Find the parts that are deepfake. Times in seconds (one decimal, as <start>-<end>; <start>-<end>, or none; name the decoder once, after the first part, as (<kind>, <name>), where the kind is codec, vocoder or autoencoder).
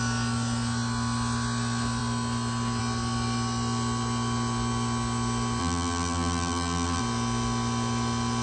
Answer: 5.6-7.0 (vocoder, BigVGAN v2)